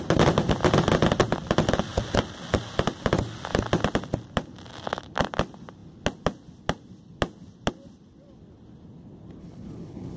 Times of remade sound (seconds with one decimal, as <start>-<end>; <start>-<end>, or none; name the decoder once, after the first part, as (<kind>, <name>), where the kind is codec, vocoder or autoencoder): 9.4-10.2 (codec, HILCodec)